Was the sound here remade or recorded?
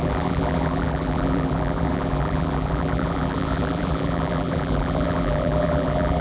remade